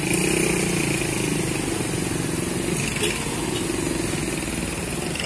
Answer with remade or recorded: recorded